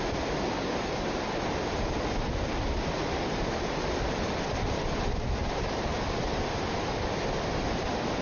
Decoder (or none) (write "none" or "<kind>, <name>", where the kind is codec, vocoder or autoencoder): none